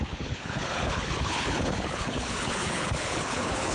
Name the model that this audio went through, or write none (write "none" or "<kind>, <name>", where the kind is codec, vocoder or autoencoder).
codec, HILCodec